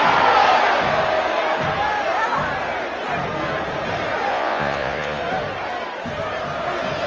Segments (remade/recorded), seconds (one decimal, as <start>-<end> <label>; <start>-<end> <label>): 0.0-4.3 recorded; 4.3-5.2 remade; 5.2-7.1 recorded